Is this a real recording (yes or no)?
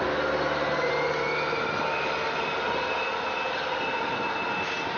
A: yes